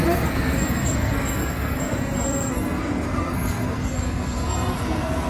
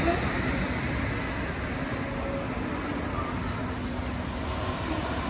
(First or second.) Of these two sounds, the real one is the second